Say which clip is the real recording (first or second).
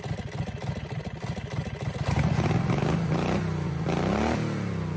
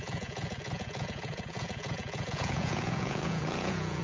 first